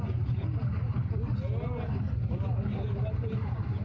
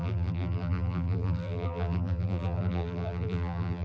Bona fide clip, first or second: first